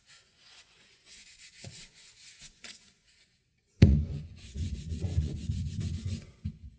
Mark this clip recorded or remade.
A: remade